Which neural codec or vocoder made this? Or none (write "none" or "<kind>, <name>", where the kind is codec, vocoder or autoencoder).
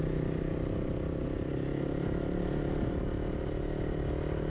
none